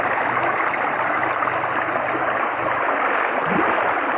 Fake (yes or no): no